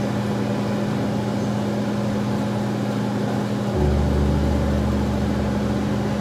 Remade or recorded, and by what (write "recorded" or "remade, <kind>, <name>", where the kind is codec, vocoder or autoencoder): recorded